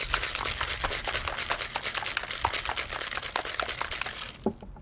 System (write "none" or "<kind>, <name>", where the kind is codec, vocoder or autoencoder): none